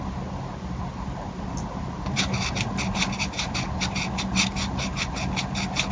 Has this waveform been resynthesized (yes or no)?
no